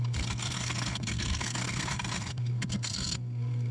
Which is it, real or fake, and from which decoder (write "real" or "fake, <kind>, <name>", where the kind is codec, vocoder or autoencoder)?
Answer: fake, codec, SNAC